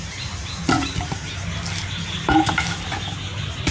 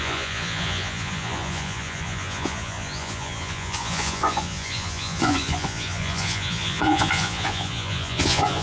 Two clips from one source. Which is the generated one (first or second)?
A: second